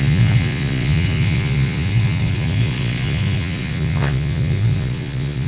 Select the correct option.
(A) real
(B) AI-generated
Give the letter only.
B